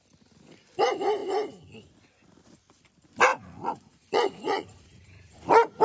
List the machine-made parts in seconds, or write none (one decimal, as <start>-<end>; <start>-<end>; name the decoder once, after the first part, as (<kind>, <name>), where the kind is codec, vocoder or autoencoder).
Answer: 3.3-5.8 (vocoder, Vocos)